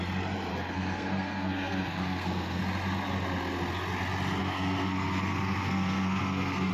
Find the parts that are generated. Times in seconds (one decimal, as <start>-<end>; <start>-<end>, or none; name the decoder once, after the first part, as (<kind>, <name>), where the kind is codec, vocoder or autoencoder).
0.5-2.6 (codec, SNAC); 4.4-6.7